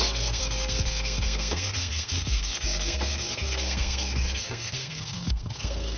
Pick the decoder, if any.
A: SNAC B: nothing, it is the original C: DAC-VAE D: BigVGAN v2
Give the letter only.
A